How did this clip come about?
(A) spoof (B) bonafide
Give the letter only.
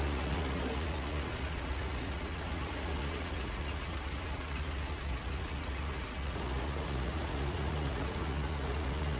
A